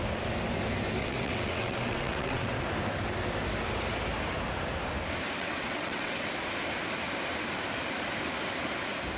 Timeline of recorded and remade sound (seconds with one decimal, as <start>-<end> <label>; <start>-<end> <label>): 0.0-1.0 recorded; 1.0-2.5 remade; 2.5-5.4 recorded; 5.4-6.3 remade; 6.3-9.2 recorded

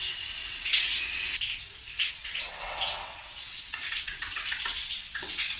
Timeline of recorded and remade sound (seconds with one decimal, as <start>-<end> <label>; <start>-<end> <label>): 0.0-0.9 remade; 0.9-2.0 recorded; 2.0-5.6 remade

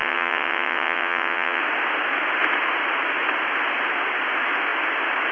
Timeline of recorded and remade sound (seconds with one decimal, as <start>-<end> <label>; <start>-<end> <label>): 0.0-1.6 remade; 1.6-5.3 recorded

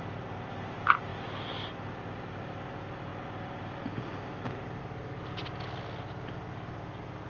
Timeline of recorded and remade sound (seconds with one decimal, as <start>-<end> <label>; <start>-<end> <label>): 0.0-7.3 recorded

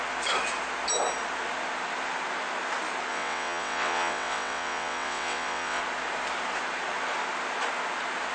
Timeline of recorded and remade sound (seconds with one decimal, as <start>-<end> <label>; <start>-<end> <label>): 0.0-3.1 recorded; 3.1-5.8 remade; 5.8-8.3 recorded